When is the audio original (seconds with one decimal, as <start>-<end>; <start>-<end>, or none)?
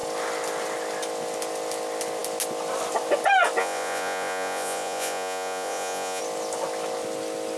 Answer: 0.0-3.6; 6.2-7.6